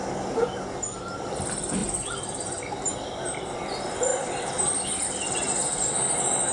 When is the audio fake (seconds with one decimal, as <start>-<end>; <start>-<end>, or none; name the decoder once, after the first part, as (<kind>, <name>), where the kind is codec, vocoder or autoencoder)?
1.0-6.5 (vocoder, BigVGAN v2)